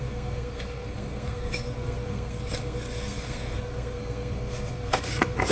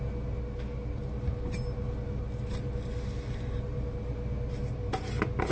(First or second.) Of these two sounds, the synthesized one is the first